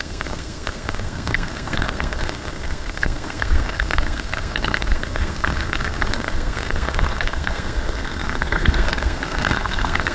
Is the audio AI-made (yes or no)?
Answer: yes